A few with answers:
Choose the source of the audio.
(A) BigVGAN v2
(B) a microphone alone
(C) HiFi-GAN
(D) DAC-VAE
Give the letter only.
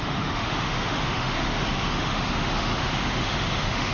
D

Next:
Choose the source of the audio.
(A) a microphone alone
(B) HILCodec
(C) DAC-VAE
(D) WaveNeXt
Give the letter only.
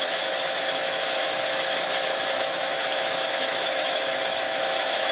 C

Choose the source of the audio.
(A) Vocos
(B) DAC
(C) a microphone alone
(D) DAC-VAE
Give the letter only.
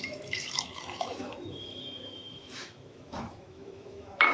D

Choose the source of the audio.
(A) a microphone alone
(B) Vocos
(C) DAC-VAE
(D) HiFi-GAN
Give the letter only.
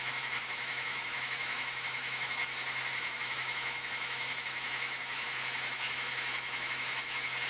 C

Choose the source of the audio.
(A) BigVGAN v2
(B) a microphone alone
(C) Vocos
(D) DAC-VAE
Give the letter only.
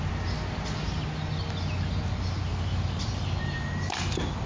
B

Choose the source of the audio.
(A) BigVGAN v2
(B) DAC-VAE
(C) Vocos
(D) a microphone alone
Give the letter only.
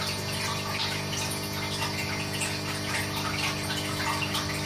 D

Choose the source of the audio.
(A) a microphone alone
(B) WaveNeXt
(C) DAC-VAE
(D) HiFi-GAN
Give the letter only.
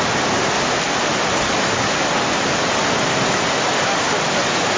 A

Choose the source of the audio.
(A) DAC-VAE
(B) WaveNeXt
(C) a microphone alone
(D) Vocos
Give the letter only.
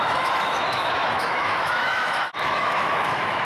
A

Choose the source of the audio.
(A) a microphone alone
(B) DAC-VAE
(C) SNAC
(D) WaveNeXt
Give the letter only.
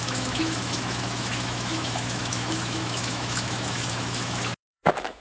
B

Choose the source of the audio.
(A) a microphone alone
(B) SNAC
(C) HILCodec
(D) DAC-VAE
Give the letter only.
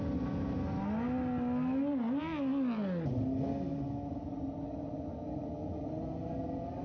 A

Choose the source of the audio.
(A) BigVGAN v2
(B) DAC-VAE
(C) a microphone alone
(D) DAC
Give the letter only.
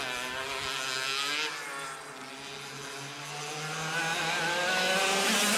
C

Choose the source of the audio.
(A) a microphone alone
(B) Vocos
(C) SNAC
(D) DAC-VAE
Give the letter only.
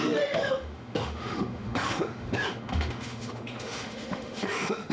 D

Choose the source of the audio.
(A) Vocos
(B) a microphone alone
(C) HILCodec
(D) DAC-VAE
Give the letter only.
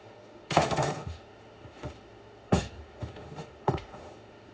D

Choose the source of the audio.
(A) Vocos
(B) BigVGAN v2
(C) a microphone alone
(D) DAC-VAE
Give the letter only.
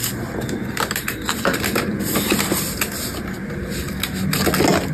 C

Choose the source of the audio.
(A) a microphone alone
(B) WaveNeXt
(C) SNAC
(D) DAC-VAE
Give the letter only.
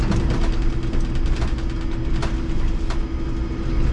A